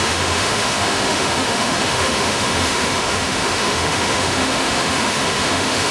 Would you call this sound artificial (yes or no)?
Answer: yes